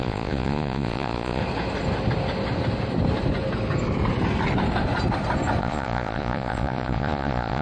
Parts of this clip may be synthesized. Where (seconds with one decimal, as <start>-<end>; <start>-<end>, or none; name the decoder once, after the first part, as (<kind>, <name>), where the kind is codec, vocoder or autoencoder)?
0.0-1.4 (vocoder, Vocos); 5.6-7.6